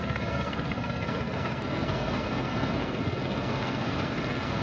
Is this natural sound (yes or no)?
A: no